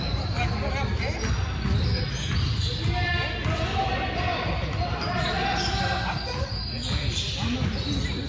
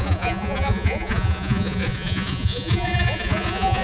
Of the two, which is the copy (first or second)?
second